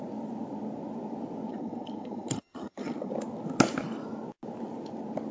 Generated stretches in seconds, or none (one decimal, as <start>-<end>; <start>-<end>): 1.5-3.1